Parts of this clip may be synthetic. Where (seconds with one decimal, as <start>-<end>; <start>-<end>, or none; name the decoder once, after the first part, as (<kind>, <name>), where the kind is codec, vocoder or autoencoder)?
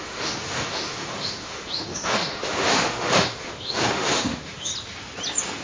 0.0-4.7 (autoencoder, DAC-VAE)